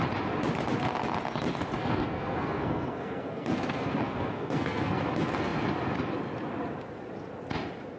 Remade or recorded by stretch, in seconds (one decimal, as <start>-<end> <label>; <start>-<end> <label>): 0.0-1.8 recorded; 1.8-5.0 remade; 5.0-8.0 recorded